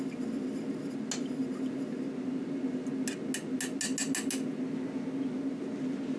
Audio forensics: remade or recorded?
recorded